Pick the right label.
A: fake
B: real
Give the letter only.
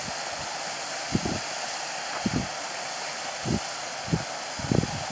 B